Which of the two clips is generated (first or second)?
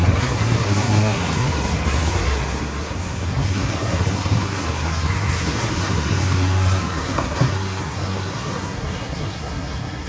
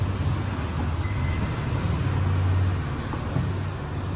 first